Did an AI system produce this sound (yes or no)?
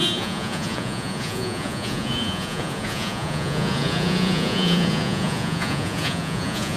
yes